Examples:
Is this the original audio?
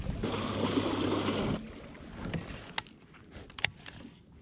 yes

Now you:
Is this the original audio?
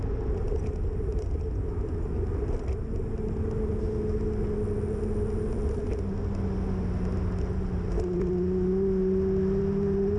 yes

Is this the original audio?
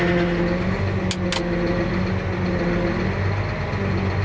yes